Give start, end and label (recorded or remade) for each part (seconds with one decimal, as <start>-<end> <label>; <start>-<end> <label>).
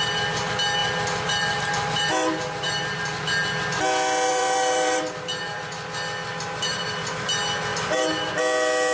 0.0-0.8 recorded; 0.8-3.0 remade; 3.0-4.3 recorded; 4.3-5.6 remade; 5.6-6.3 recorded; 6.3-7.1 remade; 7.1-7.7 recorded; 7.7-8.3 remade; 8.3-8.9 recorded